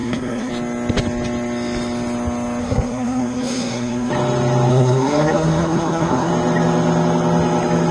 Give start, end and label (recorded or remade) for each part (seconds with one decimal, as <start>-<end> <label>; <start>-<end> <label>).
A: 0.0-0.5 remade; 0.5-2.6 recorded; 2.6-4.1 remade; 4.1-4.7 recorded; 4.7-6.3 remade; 6.3-7.9 recorded